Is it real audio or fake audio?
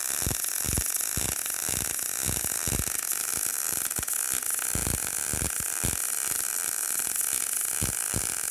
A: real